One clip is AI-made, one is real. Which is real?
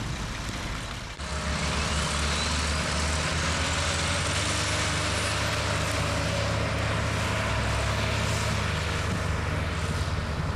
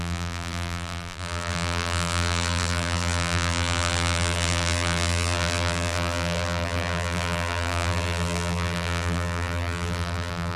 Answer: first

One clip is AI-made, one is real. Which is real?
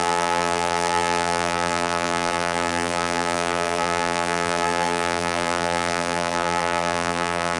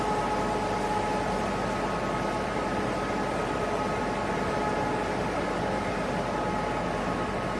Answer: second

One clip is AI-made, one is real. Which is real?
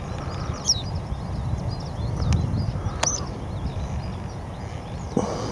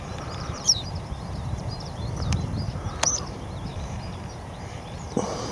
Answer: first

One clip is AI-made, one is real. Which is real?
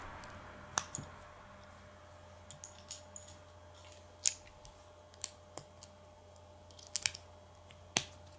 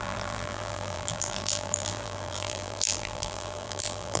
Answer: first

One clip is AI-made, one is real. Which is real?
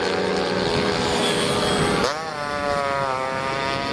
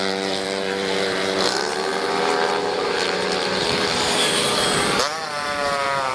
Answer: first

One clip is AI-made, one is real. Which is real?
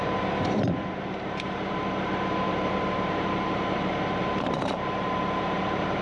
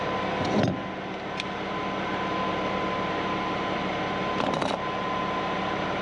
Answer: second